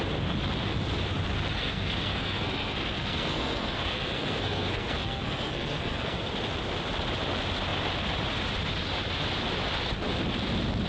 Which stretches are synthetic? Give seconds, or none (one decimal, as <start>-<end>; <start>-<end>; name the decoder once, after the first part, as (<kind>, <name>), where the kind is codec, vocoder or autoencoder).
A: 1.5-6.3 (codec, SNAC)